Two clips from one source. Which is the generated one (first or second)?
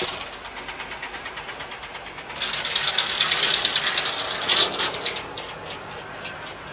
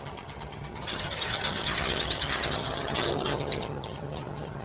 second